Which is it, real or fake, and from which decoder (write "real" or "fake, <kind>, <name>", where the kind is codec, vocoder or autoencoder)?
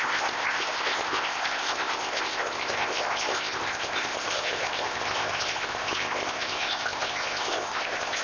fake, codec, ZipCodec